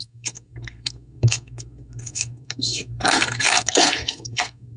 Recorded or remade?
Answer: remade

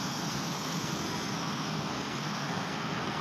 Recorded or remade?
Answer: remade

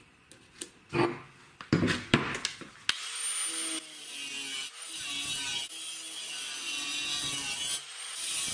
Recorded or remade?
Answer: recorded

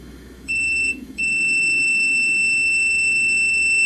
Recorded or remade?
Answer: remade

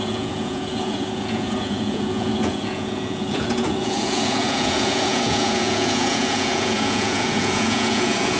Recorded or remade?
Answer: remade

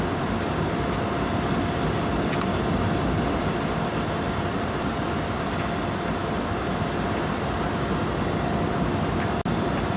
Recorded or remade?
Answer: recorded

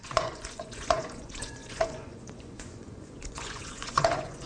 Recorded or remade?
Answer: remade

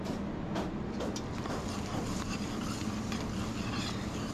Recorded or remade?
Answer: recorded